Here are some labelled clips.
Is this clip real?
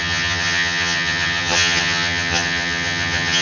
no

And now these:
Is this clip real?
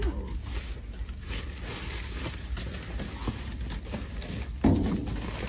yes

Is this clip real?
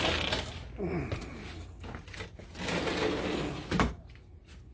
yes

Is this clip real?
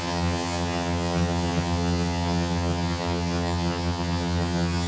no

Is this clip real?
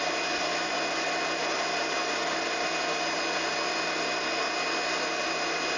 yes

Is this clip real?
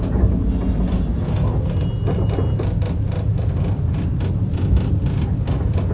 yes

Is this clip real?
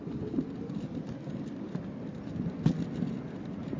yes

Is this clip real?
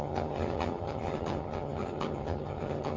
no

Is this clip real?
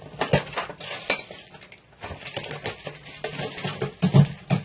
yes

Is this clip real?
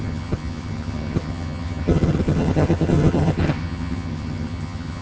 no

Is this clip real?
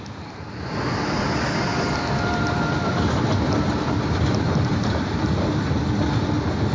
yes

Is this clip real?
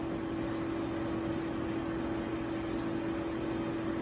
yes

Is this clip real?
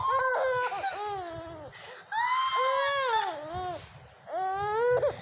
yes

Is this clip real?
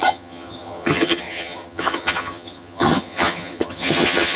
no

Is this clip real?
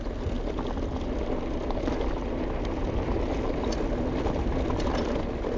yes